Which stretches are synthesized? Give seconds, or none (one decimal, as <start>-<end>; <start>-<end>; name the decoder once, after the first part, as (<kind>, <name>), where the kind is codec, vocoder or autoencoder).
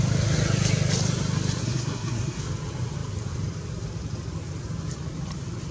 1.6-2.4 (codec, SNAC)